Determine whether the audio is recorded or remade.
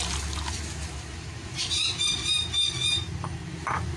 recorded